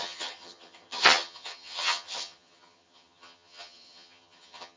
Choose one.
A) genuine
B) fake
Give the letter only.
B